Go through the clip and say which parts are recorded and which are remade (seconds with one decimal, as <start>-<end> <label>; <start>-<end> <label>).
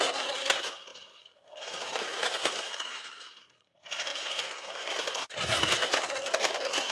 0.0-6.9 remade